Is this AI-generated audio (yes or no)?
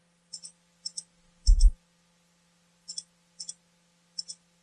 no